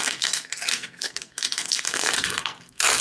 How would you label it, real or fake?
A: fake